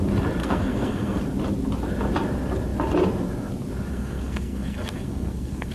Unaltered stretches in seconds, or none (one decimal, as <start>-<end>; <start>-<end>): 0.0-0.4; 1.2-3.9